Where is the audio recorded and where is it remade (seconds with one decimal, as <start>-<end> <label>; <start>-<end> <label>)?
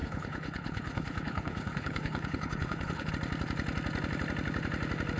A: 0.0-3.1 remade; 3.1-5.2 recorded